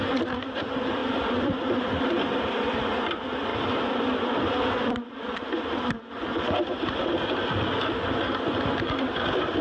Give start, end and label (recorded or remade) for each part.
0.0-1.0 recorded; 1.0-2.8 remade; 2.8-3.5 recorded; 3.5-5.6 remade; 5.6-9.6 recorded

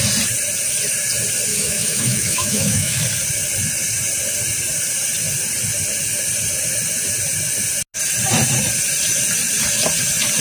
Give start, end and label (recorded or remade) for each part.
0.0-1.5 recorded; 1.5-3.0 remade; 3.0-10.4 recorded

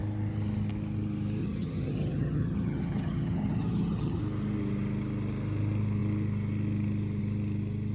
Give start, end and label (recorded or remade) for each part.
0.0-1.4 recorded; 1.4-4.2 remade; 4.2-7.9 recorded

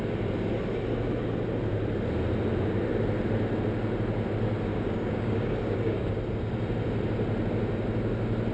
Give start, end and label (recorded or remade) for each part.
0.0-4.7 recorded; 4.7-6.1 remade; 6.1-8.5 recorded

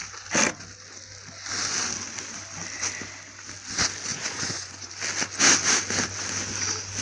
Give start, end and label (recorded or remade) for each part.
0.0-4.1 recorded; 4.1-4.9 remade; 4.9-7.0 recorded

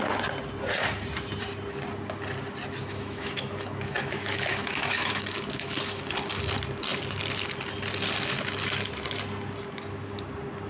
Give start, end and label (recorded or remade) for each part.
0.0-2.8 recorded; 2.8-6.0 remade; 6.0-10.7 recorded